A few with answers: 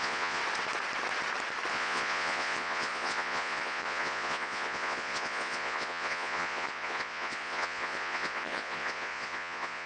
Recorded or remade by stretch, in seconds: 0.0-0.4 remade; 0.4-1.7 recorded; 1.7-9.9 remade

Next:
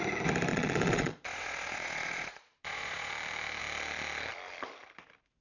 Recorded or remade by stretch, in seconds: 0.0-0.5 recorded; 0.5-3.1 remade; 3.1-5.4 recorded

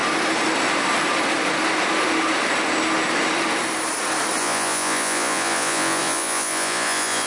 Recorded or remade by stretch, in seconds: 0.0-4.4 recorded; 4.4-7.3 remade

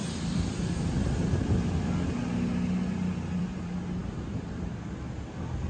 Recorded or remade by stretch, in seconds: 0.0-5.7 recorded

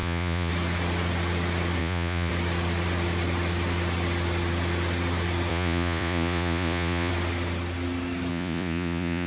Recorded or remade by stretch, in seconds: 0.0-0.5 remade; 0.5-1.8 recorded; 1.8-2.3 remade; 2.3-5.5 recorded; 5.5-7.1 remade; 7.1-8.3 recorded; 8.3-9.3 remade

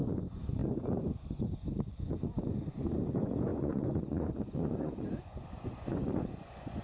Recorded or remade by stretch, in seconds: 0.0-6.8 remade